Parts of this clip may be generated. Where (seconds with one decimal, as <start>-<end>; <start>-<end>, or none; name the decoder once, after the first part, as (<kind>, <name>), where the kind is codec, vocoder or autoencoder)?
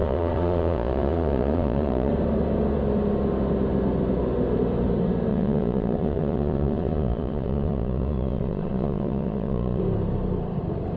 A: 0.0-2.1 (vocoder, Vocos); 5.3-9.8